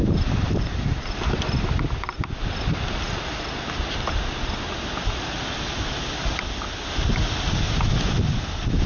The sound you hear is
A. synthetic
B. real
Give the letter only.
B